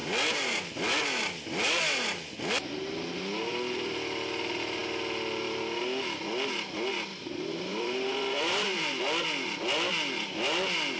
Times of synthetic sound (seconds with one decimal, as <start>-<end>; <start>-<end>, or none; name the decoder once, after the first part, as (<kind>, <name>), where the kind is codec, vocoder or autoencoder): 7.1-9.0 (vocoder, BigVGAN v2)